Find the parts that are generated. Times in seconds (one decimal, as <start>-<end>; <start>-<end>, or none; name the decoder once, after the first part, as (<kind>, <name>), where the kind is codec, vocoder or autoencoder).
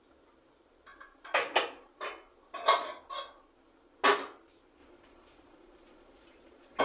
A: 4.8-6.8 (vocoder, Vocos)